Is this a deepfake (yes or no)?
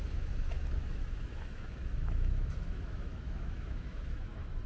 yes